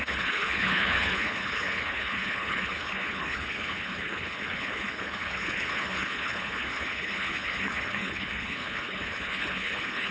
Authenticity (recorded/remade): remade